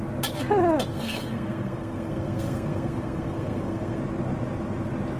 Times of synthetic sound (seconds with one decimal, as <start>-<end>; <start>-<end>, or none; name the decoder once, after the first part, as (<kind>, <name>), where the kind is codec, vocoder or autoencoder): 0.9-4.0 (codec, SNAC)